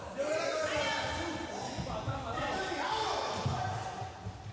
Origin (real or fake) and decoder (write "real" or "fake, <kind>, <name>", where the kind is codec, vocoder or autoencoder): real